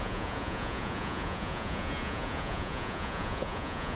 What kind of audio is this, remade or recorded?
remade